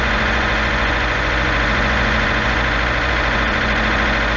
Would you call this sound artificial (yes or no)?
yes